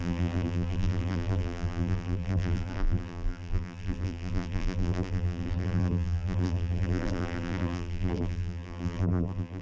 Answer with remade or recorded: remade